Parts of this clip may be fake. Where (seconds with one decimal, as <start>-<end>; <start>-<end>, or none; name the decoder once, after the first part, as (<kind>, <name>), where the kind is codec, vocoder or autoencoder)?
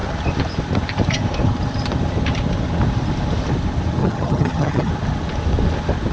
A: 4.0-4.9 (vocoder, HiFi-GAN)